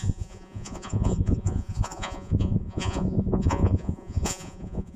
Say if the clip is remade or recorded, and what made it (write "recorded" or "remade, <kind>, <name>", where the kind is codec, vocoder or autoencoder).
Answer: remade, vocoder, Vocos